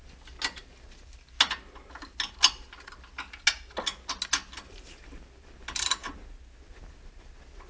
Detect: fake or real real